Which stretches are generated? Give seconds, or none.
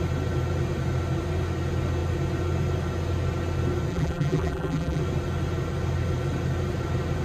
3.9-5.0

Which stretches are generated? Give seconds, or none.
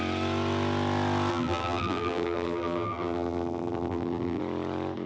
1.3-4.4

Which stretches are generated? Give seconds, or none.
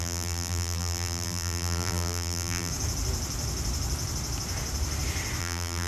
0.0-2.7; 5.4-5.9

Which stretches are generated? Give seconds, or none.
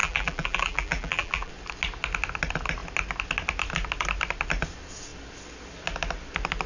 0.0-1.5